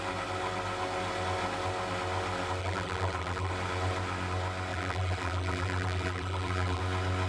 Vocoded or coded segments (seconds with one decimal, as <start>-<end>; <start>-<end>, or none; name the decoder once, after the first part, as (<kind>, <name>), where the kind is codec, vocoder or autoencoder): 2.6-3.5 (vocoder, BigVGAN v2); 4.7-6.8